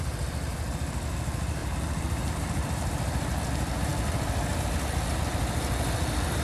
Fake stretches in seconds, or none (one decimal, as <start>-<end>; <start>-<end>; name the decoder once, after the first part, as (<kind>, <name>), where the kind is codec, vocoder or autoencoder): 1.6-2.9 (vocoder, BigVGAN v2)